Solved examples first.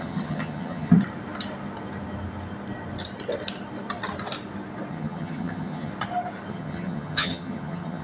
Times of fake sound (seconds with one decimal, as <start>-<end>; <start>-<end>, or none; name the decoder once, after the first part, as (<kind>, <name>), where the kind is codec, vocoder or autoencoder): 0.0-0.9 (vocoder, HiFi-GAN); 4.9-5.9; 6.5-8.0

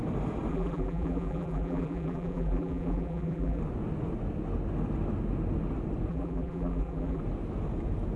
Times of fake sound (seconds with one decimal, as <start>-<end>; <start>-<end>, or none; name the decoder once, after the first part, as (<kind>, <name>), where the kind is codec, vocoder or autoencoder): 0.5-3.6 (vocoder, BigVGAN v2); 6.1-7.2

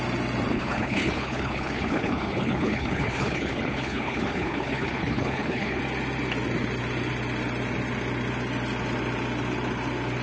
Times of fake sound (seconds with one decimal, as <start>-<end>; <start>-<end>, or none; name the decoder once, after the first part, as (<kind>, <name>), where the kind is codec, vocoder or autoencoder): 0.5-5.8 (codec, HILCodec)

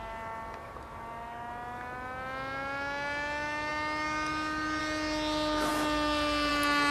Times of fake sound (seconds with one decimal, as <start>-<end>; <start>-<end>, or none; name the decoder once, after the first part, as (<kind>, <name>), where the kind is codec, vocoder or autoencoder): none